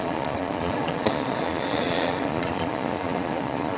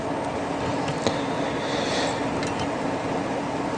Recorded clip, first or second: second